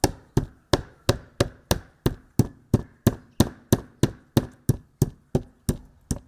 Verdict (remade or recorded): recorded